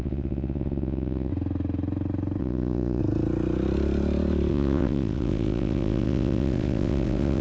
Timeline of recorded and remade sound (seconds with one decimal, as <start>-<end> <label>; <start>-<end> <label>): 0.0-1.3 remade; 1.3-2.4 recorded; 2.4-3.0 remade; 3.0-4.5 recorded; 4.5-7.4 remade